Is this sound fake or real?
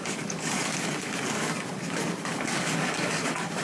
fake